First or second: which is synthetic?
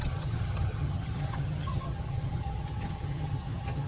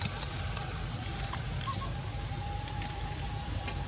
first